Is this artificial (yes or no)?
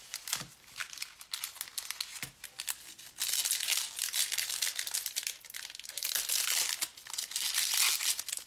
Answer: no